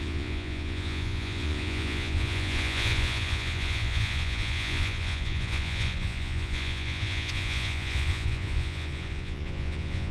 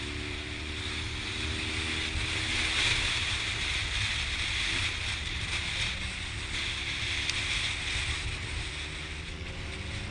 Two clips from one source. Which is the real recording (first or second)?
second